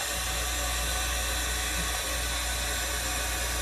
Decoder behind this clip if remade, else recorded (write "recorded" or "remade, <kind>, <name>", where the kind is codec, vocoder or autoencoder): recorded